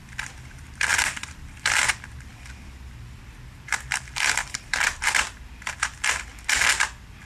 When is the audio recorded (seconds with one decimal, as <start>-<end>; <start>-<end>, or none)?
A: none